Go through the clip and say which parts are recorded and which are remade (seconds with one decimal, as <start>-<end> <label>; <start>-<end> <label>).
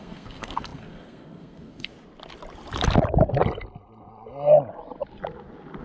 0.0-1.9 remade; 1.9-5.8 recorded